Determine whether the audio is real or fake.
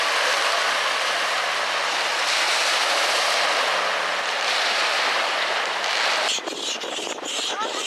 real